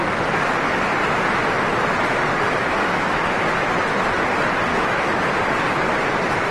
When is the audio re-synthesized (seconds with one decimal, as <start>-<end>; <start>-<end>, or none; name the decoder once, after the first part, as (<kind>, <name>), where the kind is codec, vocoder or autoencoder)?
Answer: 2.6-3.2 (autoencoder, DAC-VAE); 4.7-5.3